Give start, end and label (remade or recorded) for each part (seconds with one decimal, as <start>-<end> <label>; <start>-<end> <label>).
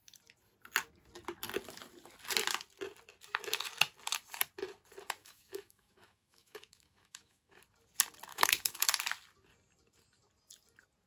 0.0-5.2 recorded; 5.2-7.6 remade; 7.6-8.3 recorded; 8.3-8.9 remade; 8.9-11.1 recorded